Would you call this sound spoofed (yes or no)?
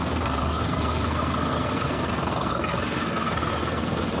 yes